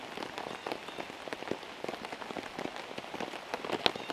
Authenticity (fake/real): real